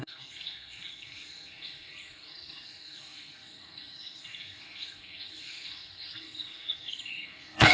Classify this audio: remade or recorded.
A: remade